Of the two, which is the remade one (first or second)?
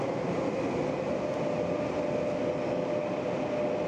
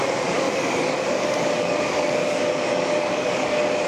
second